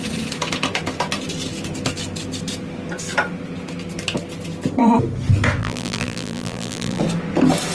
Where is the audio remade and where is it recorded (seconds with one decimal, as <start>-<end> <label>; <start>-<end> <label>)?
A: 0.0-5.6 recorded; 5.6-7.0 remade; 7.0-7.7 recorded